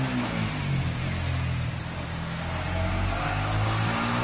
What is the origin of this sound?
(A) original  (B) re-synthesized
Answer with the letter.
A